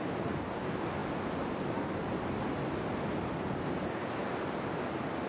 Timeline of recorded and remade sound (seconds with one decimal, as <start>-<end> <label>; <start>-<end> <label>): 0.0-5.3 recorded